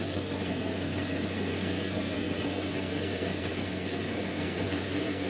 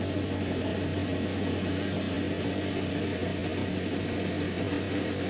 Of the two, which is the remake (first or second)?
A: first